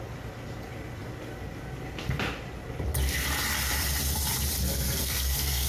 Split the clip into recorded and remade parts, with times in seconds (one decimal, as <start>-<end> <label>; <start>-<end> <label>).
0.0-4.7 recorded; 4.7-5.7 remade